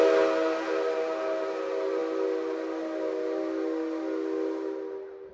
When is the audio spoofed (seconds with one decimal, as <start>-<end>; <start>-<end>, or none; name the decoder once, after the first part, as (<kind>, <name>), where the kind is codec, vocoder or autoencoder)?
none